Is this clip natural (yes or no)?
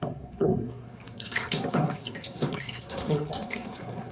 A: no